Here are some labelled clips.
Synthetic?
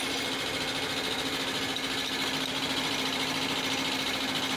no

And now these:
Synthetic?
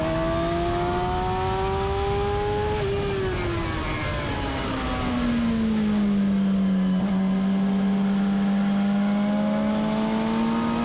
no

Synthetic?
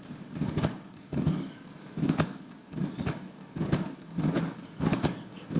yes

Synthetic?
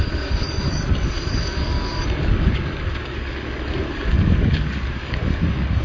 yes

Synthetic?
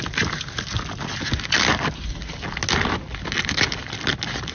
no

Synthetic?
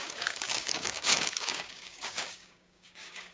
yes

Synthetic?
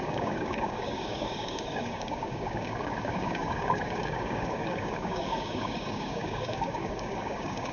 yes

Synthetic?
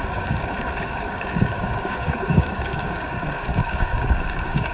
yes